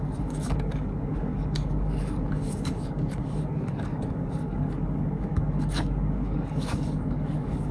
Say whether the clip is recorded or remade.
remade